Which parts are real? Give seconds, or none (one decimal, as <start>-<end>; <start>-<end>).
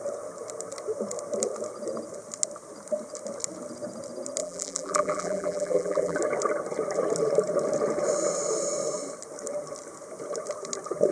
0.0-4.4; 6.2-11.1